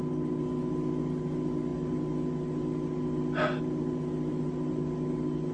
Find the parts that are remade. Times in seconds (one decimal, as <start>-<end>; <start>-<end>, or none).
none